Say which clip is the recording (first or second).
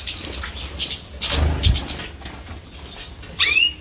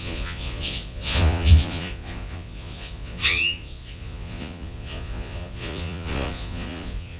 first